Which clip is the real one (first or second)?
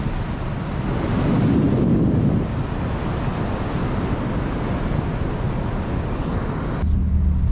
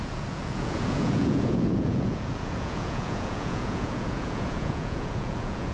first